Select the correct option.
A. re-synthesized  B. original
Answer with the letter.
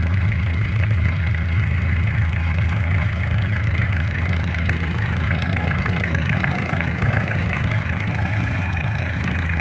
A